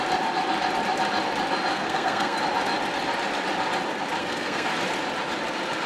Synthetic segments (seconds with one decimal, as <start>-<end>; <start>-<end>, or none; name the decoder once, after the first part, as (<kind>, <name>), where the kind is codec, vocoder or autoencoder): 1.7-2.4 (codec, SNAC); 4.2-4.7